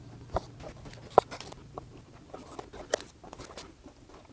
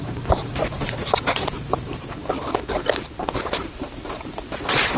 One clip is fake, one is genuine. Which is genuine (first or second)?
first